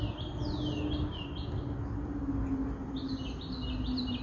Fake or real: real